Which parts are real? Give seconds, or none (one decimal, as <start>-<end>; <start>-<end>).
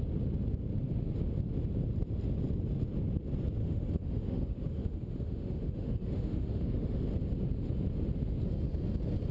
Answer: 0.0-3.6; 7.1-9.3